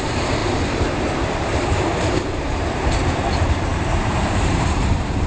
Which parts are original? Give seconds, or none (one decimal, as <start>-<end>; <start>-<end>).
none